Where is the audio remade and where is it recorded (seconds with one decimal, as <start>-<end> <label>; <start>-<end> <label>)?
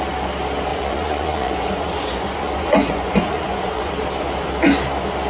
0.0-0.7 recorded; 0.7-3.9 remade; 3.9-5.3 recorded